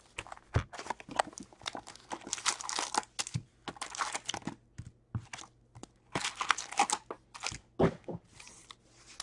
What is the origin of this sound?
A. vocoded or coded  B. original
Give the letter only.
B